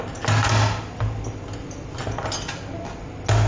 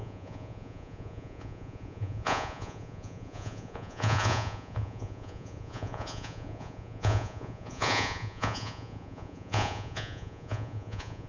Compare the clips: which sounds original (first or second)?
first